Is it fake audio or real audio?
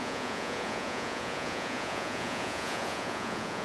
fake